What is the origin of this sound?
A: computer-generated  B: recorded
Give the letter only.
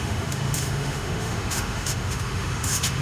A